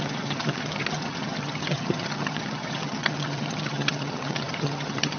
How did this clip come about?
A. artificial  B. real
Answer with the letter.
A